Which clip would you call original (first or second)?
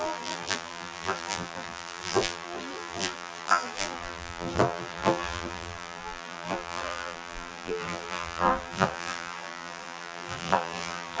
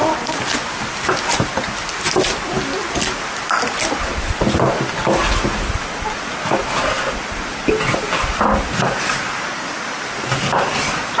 second